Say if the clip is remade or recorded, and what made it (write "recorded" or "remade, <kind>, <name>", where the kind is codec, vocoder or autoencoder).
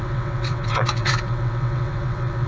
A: remade, vocoder, WaveNeXt